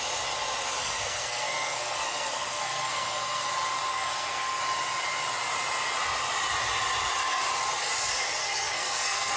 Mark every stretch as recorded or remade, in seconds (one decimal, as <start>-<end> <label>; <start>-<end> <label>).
0.0-0.8 recorded; 0.8-3.5 remade; 3.5-3.9 recorded; 3.9-4.6 remade; 4.6-8.4 recorded; 8.4-9.4 remade